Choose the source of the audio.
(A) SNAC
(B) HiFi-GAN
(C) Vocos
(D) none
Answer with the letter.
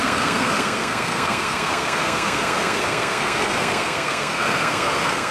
A